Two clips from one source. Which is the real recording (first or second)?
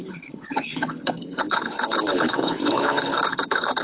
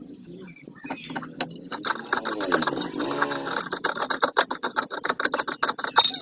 second